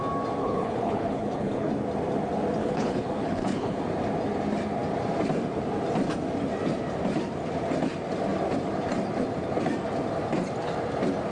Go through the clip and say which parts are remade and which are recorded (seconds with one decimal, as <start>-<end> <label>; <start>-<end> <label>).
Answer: 0.0-0.4 recorded; 0.4-1.7 remade; 1.7-2.6 recorded; 2.6-3.8 remade; 3.8-11.3 recorded